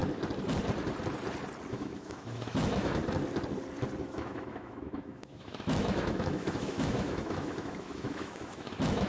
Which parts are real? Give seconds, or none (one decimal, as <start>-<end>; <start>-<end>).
0.0-1.7; 3.0-4.0